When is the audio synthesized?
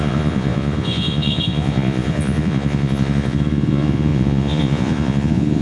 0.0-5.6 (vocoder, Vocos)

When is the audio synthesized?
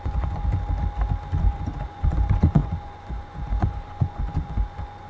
0.0-0.5 (vocoder, Vocos); 1.4-5.1